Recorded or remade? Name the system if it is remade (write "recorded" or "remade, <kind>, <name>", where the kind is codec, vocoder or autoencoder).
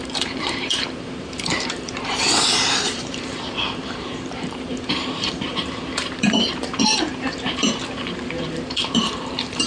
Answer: remade, vocoder, BigVGAN v2